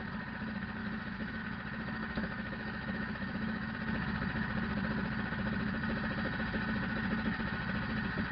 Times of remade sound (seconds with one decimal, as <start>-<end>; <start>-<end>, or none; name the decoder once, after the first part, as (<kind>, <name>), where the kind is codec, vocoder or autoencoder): 0.8-1.4 (autoencoder, DAC-VAE); 2.0-3.7